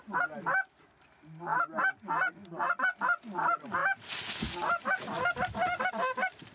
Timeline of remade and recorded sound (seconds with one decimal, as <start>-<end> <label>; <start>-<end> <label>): 0.0-6.5 recorded